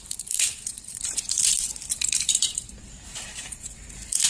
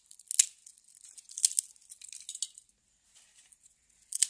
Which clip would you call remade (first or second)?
first